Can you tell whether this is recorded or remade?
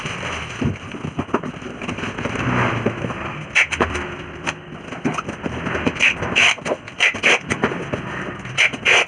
recorded